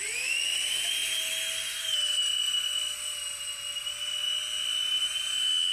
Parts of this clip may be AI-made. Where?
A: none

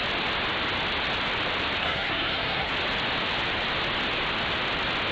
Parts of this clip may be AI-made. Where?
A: 1.8-2.7 (codec, SNAC)

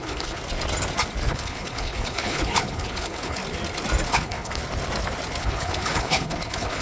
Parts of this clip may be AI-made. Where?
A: 0.0-0.4 (codec, HILCodec); 1.3-3.4; 4.1-4.6; 5.4-6.8

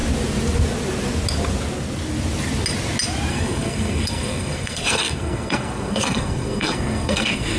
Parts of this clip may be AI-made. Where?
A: 3.3-7.6 (codec, SNAC)

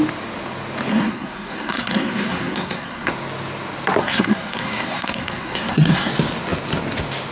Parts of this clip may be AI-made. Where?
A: 0.9-3.1 (codec, SNAC); 4.0-6.1

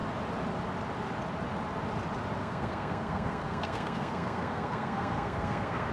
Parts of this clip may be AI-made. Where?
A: 2.4-5.9 (codec, SNAC)

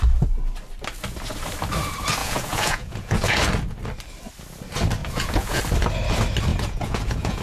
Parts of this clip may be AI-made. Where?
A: 2.2-3.4 (vocoder, Vocos); 5.0-5.6; 6.5-7.4

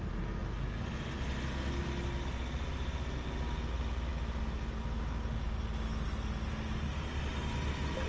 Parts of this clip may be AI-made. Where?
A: none